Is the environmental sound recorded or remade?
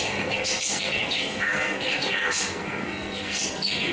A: remade